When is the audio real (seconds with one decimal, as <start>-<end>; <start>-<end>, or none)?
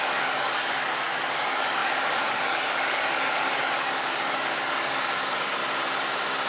5.6-6.5